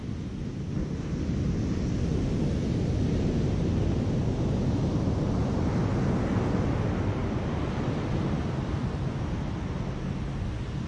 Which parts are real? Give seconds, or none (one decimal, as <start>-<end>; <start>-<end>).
0.0-10.9